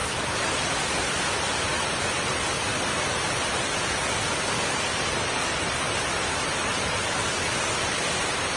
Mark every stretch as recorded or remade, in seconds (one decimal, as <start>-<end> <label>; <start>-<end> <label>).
0.0-8.6 recorded